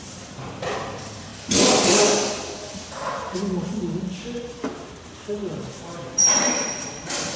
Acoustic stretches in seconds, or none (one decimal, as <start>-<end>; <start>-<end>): 1.3-4.5